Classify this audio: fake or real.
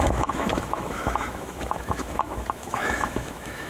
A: fake